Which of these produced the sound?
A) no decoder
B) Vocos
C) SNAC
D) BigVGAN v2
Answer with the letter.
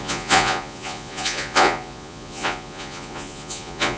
B